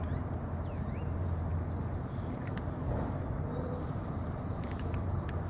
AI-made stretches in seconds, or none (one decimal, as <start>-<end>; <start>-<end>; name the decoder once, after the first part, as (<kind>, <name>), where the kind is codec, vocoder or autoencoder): 0.0-1.5 (vocoder, BigVGAN v2); 2.0-5.5